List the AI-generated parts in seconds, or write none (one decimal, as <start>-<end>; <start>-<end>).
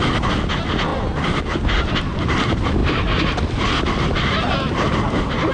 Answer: none